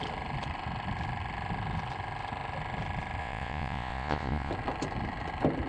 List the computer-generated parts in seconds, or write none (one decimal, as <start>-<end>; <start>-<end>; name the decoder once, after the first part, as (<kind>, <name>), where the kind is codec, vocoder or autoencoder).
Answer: 3.2-4.5 (vocoder, Vocos)